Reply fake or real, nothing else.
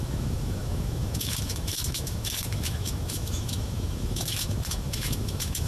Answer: fake